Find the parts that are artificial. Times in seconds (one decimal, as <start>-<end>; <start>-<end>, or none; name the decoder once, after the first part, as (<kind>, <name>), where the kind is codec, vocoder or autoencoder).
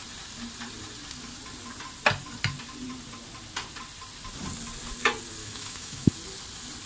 5.4-6.1 (autoencoder, DAC-VAE)